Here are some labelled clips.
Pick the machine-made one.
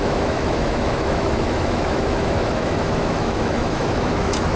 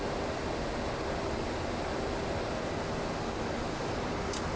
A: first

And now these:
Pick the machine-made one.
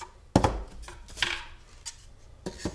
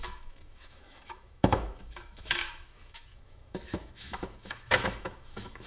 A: second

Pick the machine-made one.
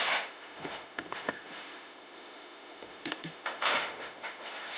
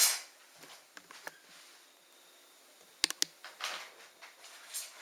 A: first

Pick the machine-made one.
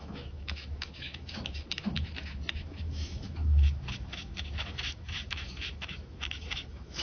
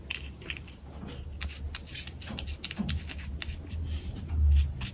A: first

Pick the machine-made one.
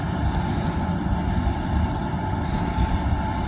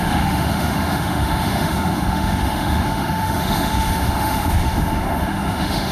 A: second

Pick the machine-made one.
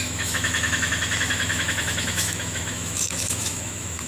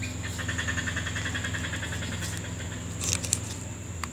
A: first